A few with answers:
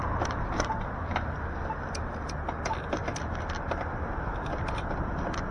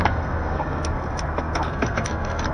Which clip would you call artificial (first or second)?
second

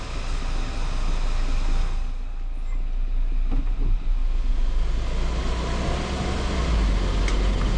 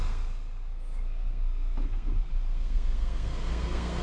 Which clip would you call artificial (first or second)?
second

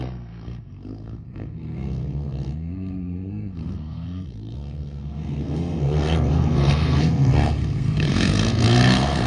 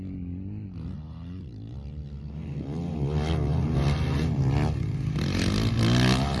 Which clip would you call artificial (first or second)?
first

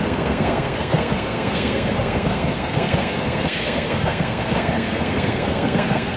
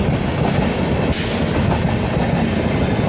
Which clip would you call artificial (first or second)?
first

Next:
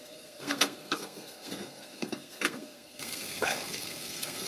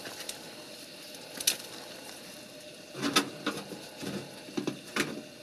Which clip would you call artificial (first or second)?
first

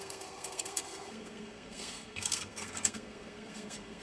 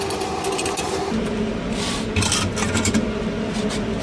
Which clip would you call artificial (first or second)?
first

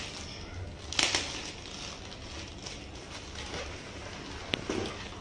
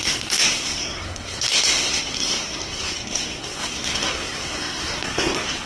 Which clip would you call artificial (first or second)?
second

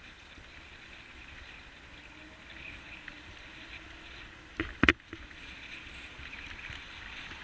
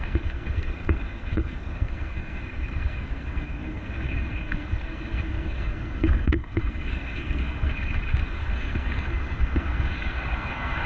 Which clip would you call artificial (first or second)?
second